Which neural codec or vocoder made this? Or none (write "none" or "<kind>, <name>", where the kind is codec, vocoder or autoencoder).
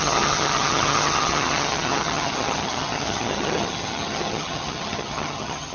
vocoder, HiFi-GAN